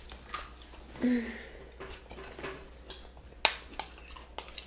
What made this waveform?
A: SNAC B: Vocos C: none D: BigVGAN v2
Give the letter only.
C